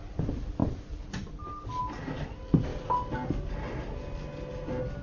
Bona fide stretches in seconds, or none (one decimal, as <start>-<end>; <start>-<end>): 0.0-5.0